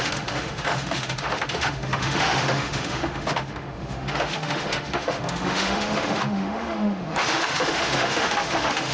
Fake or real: fake